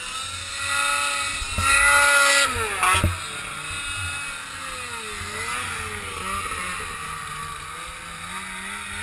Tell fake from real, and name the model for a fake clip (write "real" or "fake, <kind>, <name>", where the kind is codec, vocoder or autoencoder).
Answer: real